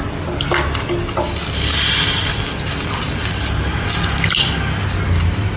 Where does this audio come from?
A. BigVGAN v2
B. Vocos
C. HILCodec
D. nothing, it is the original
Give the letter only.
D